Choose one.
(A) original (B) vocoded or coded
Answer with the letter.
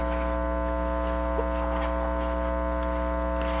A